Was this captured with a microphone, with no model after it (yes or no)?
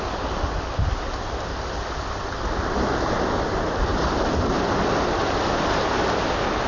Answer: yes